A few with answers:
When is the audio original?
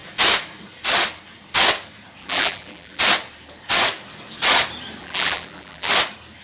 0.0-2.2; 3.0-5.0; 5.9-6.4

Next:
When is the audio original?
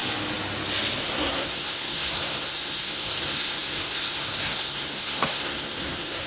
0.0-1.0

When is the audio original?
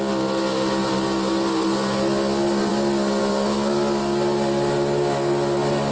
0.0-5.9